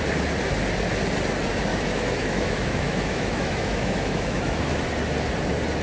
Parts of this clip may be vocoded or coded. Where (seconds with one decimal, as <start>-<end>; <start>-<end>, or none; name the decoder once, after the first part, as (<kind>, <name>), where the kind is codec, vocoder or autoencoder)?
1.7-4.8 (autoencoder, DAC-VAE)